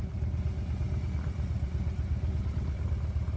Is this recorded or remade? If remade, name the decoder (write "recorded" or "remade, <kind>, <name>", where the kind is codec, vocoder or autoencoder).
recorded